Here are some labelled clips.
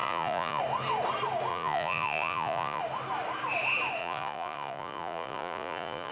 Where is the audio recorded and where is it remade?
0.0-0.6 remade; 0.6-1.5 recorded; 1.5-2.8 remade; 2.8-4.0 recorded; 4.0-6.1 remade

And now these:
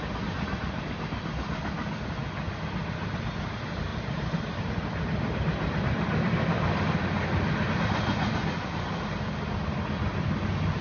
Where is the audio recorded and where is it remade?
0.0-3.9 recorded; 3.9-7.7 remade; 7.7-10.8 recorded

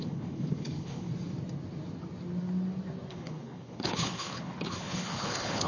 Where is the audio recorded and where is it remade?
0.0-1.1 remade; 1.1-3.1 recorded; 3.1-5.7 remade

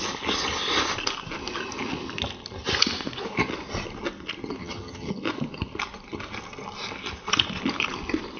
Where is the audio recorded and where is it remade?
0.0-4.6 recorded; 4.6-5.1 remade; 5.1-8.4 recorded

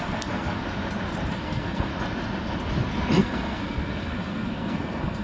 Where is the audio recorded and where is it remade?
0.0-0.6 remade; 0.6-1.3 recorded; 1.3-1.9 remade; 1.9-3.2 recorded; 3.2-5.2 remade